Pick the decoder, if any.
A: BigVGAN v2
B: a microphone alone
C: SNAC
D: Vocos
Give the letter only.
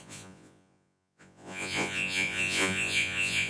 D